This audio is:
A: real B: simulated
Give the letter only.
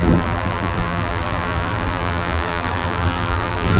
B